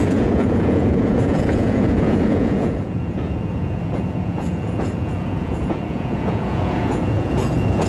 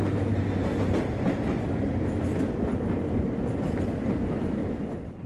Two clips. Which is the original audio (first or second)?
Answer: second